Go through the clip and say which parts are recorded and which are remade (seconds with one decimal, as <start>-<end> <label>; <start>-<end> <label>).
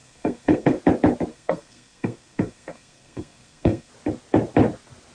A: 0.0-0.8 remade; 0.8-1.3 recorded; 1.3-3.9 remade; 3.9-5.1 recorded